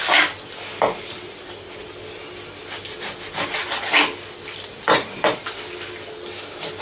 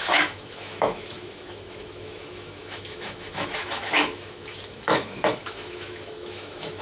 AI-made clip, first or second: second